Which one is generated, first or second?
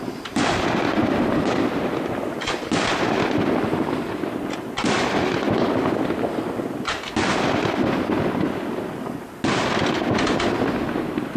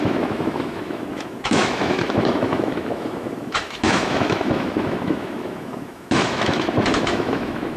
second